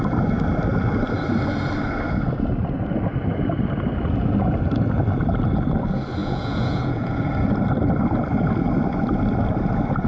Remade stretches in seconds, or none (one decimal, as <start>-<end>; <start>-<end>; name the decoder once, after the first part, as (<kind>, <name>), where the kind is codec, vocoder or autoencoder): 6.2-7.2 (vocoder, Vocos)